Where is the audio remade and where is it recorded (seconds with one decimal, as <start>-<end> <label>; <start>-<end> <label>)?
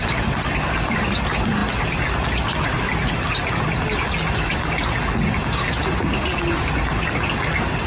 0.0-7.9 recorded